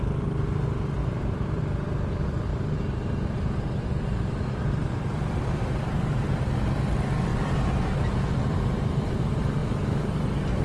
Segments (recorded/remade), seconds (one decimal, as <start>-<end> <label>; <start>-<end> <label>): 0.0-1.0 recorded; 1.0-1.6 remade; 1.6-2.5 recorded; 2.5-6.4 remade; 6.4-7.3 recorded; 7.3-9.1 remade; 9.1-9.6 recorded; 9.6-10.6 remade